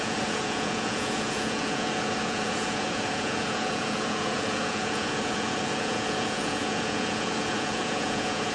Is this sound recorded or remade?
remade